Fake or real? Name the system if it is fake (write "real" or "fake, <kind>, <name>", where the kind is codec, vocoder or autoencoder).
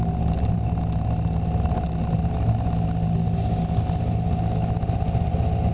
real